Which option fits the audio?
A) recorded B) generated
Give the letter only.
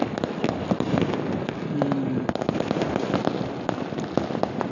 A